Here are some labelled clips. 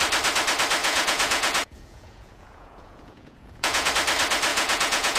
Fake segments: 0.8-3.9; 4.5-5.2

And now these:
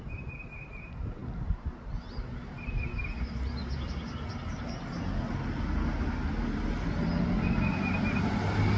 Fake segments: none

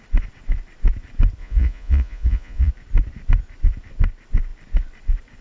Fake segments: 1.4-2.7

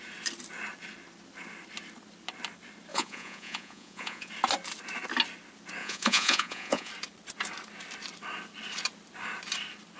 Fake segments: 2.9-4.3; 5.8-6.9

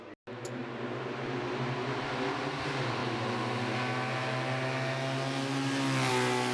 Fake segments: none